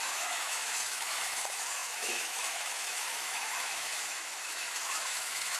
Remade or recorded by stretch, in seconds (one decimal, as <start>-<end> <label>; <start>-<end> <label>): 0.0-5.6 remade